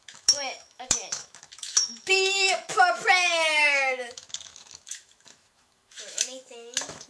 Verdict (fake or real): fake